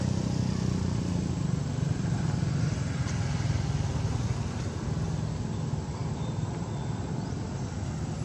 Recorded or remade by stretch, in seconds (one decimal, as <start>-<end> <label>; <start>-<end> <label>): 0.0-6.0 recorded; 6.0-6.7 remade; 6.7-8.2 recorded